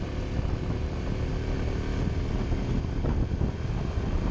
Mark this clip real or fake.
real